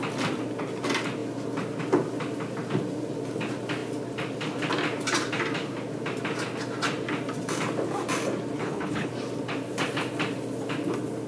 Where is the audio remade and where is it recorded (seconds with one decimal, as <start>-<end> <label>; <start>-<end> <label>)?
0.0-8.6 recorded; 8.6-9.1 remade; 9.1-11.3 recorded